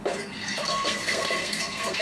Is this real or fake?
fake